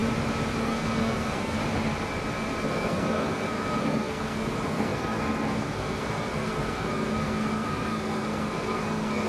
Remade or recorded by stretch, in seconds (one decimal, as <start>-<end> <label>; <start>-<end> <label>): 0.0-0.6 recorded; 0.6-1.6 remade; 1.6-2.7 recorded; 2.7-9.3 remade